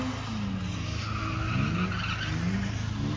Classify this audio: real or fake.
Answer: real